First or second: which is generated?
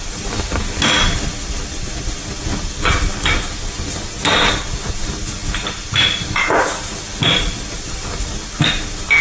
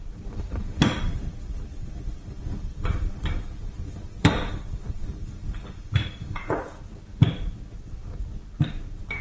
second